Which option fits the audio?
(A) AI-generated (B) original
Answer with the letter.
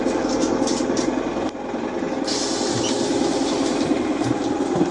B